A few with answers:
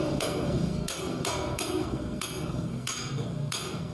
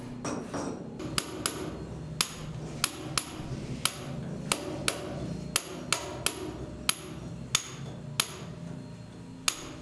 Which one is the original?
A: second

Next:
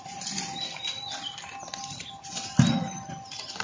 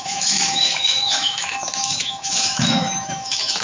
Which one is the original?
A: first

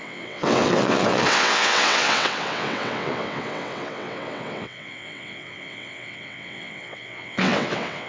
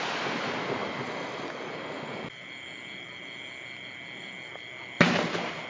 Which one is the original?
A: second